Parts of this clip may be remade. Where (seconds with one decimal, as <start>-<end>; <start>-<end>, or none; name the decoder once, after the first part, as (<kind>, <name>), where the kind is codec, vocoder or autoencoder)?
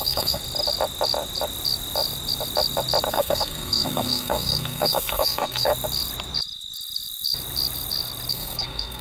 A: 0.0-0.4 (codec, SNAC); 3.1-5.7; 8.3-9.0